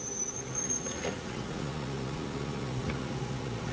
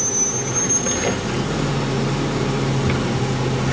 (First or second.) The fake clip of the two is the first